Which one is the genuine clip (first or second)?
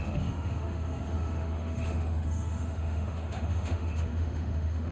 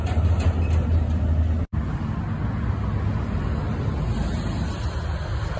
second